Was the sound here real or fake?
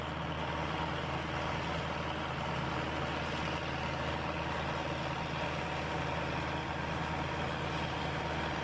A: real